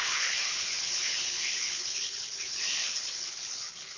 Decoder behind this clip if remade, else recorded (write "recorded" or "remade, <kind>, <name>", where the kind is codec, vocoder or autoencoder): remade, codec, HILCodec